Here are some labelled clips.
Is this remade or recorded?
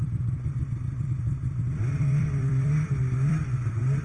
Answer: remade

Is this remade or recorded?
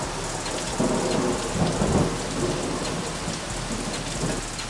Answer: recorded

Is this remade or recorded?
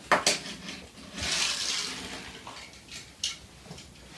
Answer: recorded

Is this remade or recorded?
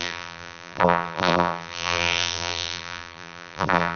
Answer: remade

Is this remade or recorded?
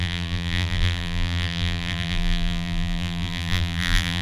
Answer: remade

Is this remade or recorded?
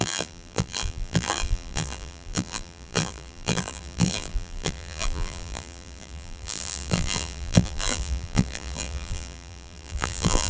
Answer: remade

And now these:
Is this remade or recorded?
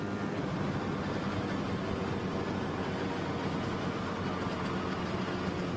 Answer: recorded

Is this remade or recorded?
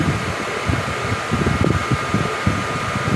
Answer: recorded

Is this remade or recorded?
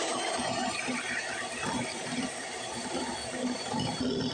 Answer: remade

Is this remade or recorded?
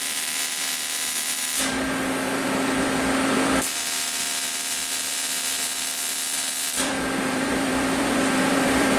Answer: remade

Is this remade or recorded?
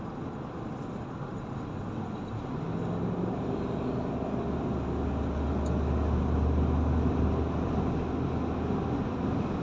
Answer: recorded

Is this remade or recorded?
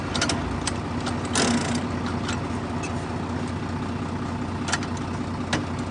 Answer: recorded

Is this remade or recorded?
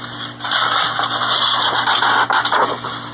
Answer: recorded